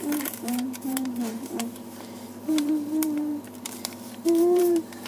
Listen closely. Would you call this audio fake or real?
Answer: fake